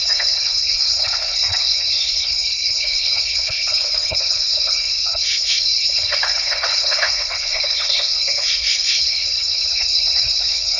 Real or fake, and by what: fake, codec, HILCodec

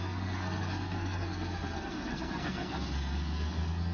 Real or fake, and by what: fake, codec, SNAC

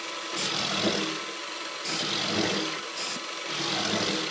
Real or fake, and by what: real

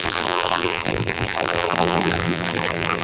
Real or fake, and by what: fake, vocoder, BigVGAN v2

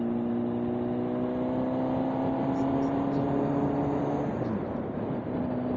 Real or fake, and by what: real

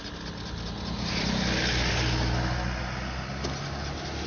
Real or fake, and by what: real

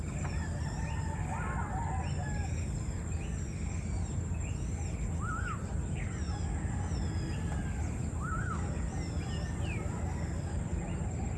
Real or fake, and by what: real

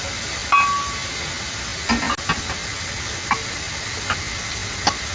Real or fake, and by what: real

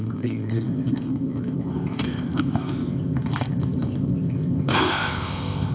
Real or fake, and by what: fake, codec, ZipCodec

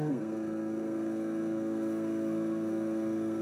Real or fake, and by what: fake, codec, SNAC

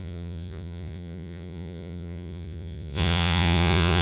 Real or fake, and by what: fake, vocoder, Vocos